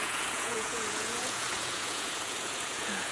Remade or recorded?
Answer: remade